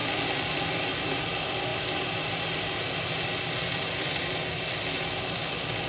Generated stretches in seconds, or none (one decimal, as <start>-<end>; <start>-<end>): none